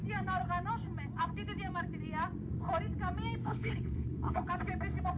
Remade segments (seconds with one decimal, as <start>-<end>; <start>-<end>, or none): 3.4-4.5